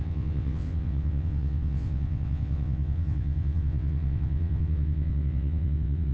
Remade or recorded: remade